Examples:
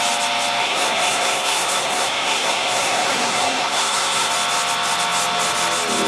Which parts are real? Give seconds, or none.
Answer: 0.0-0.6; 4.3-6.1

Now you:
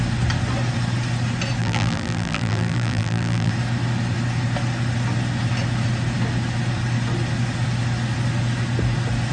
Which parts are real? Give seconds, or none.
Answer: 0.0-1.6; 3.5-9.3

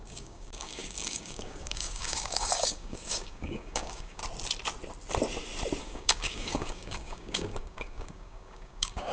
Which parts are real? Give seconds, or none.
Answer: 4.2-5.8

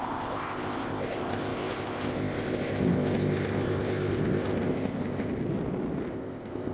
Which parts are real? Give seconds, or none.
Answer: 5.3-6.1

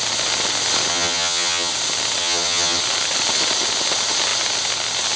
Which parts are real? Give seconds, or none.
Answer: 0.0-0.9; 1.7-2.2; 2.8-5.2

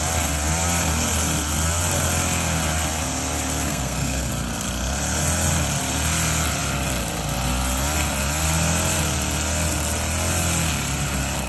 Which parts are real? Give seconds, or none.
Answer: 0.0-3.7; 4.3-11.5